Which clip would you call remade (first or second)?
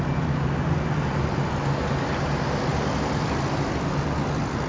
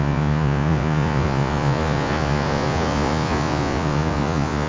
second